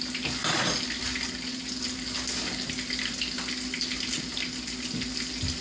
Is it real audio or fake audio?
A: real